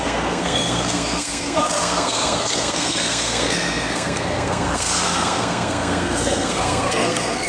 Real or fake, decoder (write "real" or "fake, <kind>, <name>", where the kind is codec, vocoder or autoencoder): fake, codec, SNAC